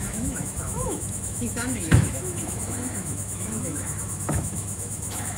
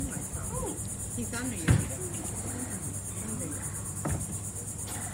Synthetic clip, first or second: first